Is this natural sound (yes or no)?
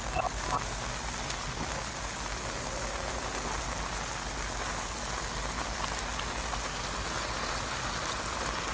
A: yes